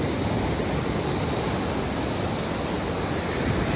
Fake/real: real